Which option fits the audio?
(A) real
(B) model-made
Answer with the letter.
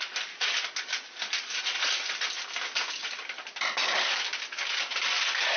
A